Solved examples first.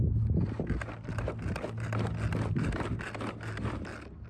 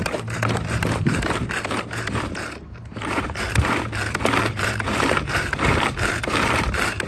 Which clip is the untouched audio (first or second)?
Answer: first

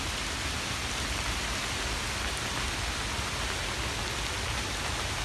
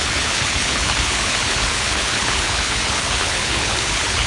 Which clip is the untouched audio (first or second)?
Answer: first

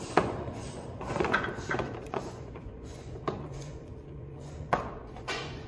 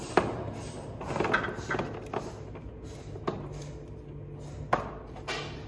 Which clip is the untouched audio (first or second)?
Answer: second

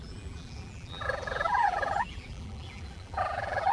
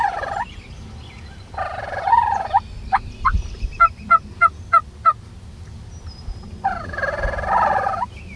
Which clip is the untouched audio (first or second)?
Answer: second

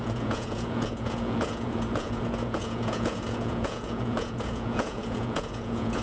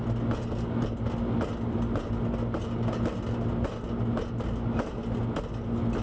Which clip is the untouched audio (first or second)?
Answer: second